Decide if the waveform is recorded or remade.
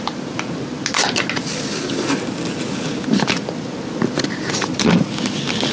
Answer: recorded